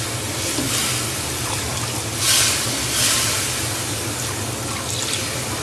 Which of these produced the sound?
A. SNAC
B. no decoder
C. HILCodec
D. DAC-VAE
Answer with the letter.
B